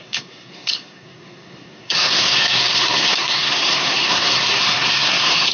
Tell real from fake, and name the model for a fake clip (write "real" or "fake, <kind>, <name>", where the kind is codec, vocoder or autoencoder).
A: fake, codec, SNAC